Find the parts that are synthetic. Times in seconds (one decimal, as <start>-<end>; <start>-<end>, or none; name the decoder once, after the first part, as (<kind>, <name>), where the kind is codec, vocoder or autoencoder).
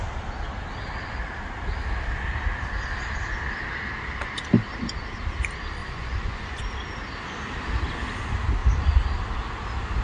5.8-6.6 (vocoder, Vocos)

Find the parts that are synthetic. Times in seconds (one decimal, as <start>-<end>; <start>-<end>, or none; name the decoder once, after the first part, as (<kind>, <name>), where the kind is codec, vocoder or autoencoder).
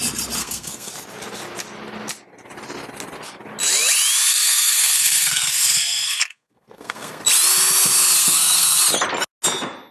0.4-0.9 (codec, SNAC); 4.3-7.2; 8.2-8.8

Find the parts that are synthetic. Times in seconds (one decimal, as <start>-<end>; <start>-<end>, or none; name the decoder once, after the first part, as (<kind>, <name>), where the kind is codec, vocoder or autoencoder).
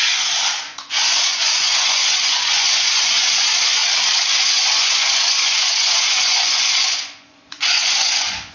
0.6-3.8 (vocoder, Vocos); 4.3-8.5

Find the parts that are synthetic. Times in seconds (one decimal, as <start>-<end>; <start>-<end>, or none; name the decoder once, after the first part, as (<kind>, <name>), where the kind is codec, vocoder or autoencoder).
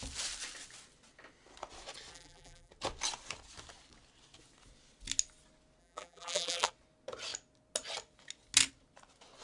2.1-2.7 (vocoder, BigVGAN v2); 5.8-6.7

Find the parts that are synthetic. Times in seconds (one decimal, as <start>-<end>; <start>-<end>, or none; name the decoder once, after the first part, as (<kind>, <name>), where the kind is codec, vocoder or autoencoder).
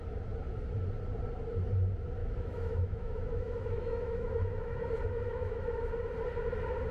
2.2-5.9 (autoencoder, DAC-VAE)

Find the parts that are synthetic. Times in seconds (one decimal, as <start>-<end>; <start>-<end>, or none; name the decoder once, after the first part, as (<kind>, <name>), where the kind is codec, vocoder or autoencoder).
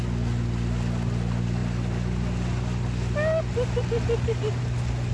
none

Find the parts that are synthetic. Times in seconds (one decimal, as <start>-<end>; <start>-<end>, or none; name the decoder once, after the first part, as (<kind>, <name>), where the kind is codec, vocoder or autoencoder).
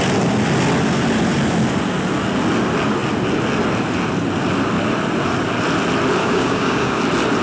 6.2-7.0 (codec, DAC)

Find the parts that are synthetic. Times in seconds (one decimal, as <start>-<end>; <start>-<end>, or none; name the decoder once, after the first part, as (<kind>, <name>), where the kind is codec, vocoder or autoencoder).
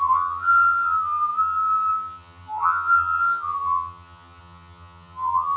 0.0-5.6 (vocoder, HiFi-GAN)